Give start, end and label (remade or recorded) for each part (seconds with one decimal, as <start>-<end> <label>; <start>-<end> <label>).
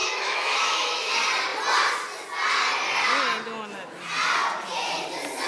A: 0.0-1.1 remade; 1.1-5.5 recorded